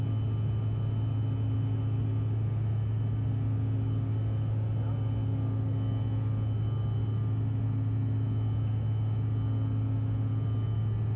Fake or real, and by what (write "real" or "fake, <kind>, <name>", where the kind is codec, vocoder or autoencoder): real